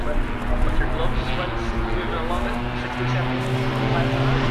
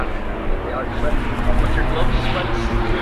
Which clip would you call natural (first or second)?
first